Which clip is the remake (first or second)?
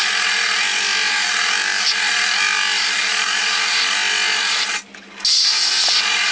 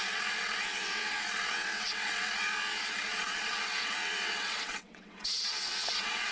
second